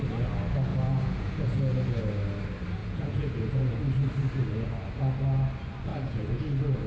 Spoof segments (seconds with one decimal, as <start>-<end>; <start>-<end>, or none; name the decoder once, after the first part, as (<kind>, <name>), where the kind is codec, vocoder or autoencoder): 0.7-2.0 (vocoder, Vocos); 2.8-3.8; 5.9-6.4